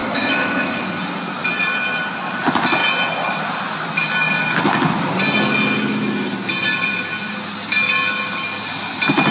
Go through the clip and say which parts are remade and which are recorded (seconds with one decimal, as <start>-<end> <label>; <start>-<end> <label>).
0.0-0.8 remade; 0.8-9.3 recorded